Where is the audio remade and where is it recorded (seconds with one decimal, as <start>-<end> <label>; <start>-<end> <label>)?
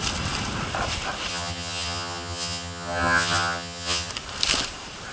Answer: 0.0-1.3 recorded; 1.3-4.1 remade; 4.1-5.1 recorded